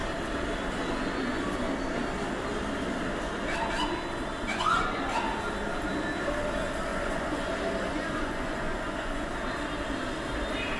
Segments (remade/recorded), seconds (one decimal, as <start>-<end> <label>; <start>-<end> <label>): 0.0-4.4 recorded; 4.4-5.0 remade; 5.0-6.9 recorded; 6.9-7.5 remade; 7.5-7.9 recorded; 7.9-9.3 remade; 9.3-10.8 recorded